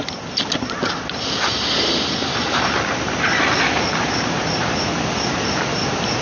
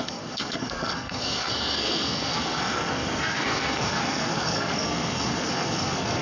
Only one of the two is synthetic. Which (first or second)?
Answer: second